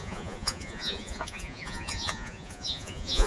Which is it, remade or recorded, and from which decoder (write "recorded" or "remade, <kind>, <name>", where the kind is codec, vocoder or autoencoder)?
remade, vocoder, Vocos